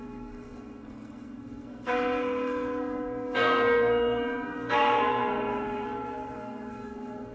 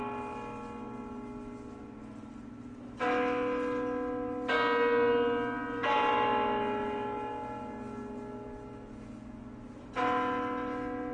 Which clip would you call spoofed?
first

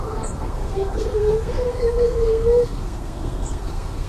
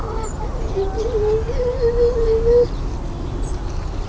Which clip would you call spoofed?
first